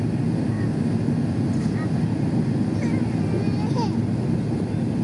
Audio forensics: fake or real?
real